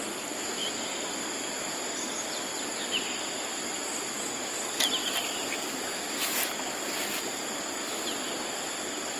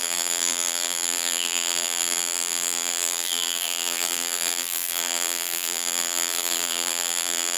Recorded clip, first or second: first